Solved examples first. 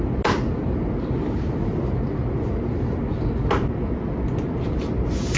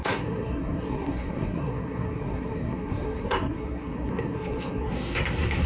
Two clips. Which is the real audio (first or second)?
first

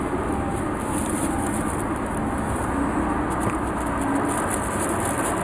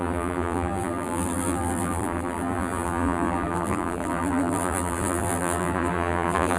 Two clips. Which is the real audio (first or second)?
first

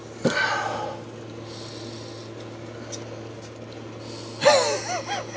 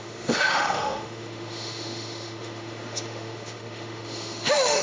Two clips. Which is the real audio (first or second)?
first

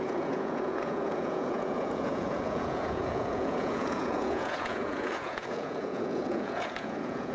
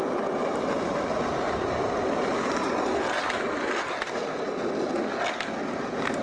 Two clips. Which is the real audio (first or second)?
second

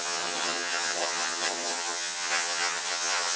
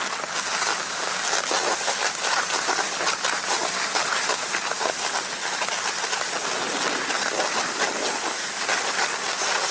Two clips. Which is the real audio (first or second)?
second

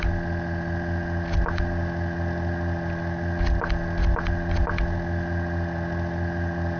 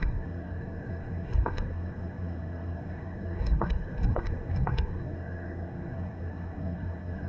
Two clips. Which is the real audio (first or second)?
first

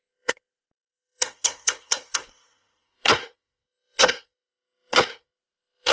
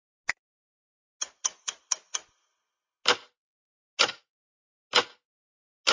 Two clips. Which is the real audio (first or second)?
second